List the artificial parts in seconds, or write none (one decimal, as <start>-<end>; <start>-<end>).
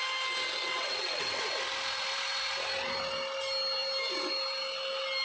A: 0.6-1.5